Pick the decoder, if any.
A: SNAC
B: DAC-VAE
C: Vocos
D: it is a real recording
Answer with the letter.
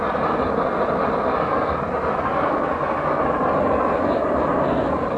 D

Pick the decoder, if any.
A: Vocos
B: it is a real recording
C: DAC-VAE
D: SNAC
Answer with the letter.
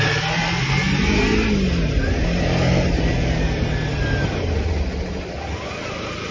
B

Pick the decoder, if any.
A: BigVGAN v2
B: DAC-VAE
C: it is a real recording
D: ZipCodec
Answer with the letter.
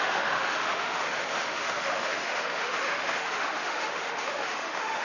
B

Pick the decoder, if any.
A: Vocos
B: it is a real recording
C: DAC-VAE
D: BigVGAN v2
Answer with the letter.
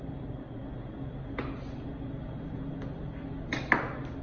B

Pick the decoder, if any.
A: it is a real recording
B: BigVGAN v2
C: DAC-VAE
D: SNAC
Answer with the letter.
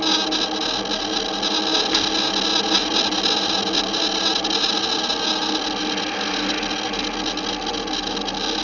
A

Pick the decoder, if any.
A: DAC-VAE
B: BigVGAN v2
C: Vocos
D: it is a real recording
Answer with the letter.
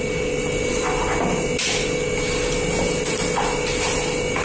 D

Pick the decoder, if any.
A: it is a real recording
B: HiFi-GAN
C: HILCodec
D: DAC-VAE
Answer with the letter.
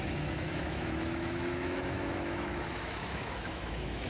D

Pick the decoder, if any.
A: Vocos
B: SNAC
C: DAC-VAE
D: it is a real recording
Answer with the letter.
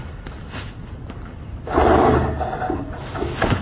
D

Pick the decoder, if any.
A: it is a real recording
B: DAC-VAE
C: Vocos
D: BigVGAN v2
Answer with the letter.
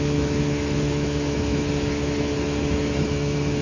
B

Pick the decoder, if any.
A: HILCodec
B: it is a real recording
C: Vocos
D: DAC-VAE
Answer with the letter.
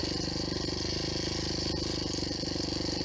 B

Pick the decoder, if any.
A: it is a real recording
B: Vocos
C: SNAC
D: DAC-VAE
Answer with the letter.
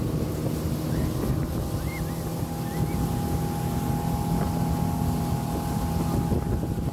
A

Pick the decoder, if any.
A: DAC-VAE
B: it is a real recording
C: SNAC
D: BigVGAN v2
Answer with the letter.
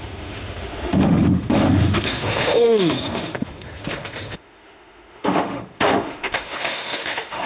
A